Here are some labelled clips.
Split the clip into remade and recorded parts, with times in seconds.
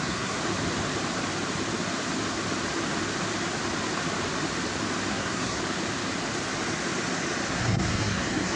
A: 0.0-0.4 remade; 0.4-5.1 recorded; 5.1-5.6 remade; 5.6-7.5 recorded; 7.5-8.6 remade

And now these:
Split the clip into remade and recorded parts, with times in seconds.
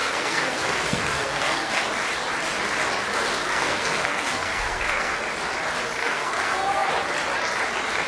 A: 0.0-1.8 remade; 1.8-3.5 recorded; 3.5-5.2 remade; 5.2-6.0 recorded; 6.0-6.9 remade; 6.9-8.1 recorded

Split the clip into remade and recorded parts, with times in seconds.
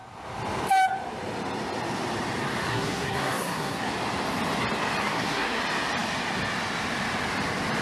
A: 0.0-2.7 recorded; 2.7-3.9 remade; 3.9-5.0 recorded; 5.0-5.6 remade; 5.6-7.8 recorded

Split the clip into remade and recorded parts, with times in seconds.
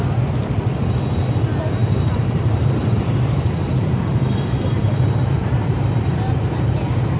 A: 0.0-1.8 recorded; 1.8-5.8 remade; 5.8-7.2 recorded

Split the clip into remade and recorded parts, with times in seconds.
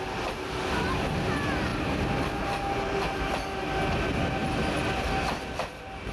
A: 0.0-6.1 recorded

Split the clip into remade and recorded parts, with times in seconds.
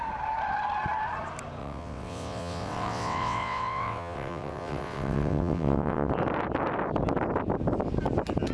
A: 0.0-1.6 recorded; 1.6-6.1 remade; 6.1-8.5 recorded